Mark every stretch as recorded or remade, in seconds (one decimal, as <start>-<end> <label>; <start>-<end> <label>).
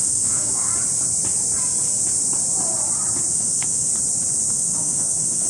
0.0-0.7 remade; 0.7-3.3 recorded; 3.3-3.9 remade; 3.9-4.5 recorded; 4.5-5.5 remade